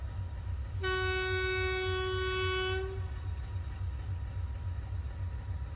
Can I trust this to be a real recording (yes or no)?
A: yes